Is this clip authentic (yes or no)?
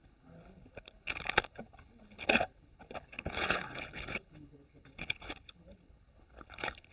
no